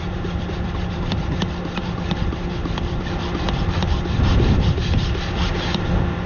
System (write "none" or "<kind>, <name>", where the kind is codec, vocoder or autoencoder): none